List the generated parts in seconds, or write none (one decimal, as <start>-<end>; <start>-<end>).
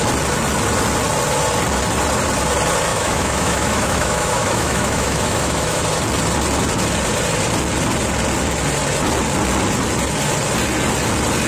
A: 2.9-5.8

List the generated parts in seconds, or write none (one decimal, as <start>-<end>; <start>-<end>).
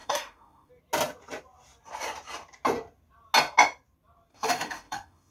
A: 0.0-0.7; 4.3-5.3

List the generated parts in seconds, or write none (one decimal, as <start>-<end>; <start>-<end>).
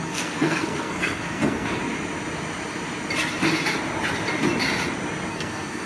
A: 0.0-1.8; 5.3-5.9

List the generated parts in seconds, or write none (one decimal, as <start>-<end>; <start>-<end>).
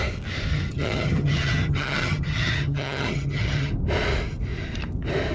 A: 0.5-3.7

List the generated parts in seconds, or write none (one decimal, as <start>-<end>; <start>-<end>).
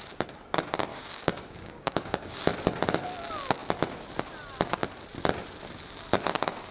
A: 0.9-2.5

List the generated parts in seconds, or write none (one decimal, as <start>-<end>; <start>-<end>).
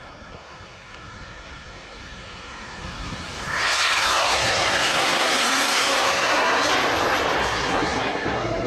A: 0.0-6.7; 7.4-8.7